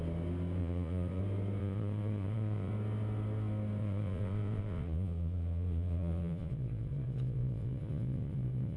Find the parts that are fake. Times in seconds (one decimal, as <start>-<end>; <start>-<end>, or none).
0.6-1.2; 1.6-2.7; 3.8-8.8